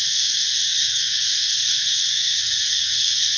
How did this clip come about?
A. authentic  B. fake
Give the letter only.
B